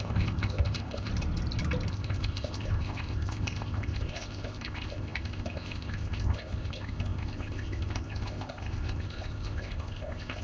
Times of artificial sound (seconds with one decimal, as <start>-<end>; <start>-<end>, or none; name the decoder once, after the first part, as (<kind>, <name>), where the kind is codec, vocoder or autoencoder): 0.0-1.1 (codec, ZipCodec); 1.9-10.4